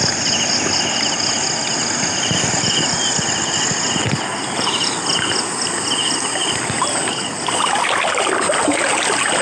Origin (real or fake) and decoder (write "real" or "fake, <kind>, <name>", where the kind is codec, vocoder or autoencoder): real